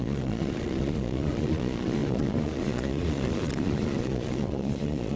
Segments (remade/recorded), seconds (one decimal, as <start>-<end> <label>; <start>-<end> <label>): 0.0-5.2 remade